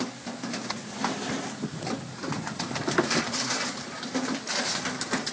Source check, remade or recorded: recorded